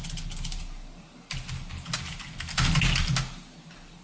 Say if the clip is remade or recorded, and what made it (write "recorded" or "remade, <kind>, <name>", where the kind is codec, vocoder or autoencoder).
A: recorded